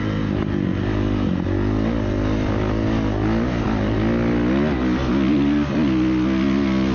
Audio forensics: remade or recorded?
recorded